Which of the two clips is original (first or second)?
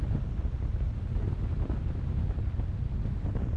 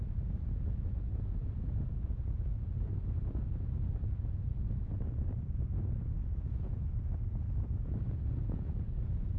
first